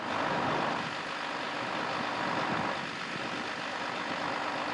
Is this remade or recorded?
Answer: recorded